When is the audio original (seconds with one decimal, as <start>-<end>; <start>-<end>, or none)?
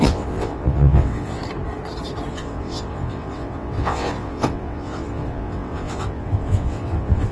1.4-2.3